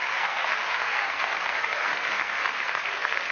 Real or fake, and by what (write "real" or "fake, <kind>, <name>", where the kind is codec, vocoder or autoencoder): fake, codec, SNAC